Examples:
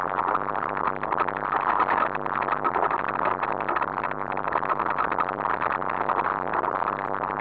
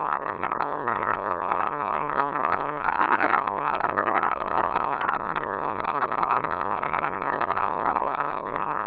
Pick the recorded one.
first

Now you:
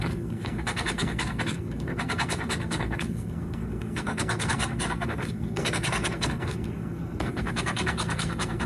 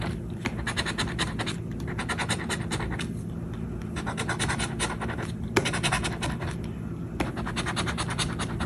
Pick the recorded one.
second